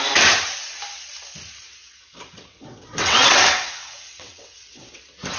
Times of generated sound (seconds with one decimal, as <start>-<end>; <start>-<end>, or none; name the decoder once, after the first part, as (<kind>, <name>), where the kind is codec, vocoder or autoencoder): 1.8-5.0 (vocoder, WaveNeXt)